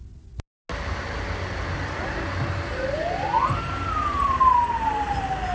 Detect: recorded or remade recorded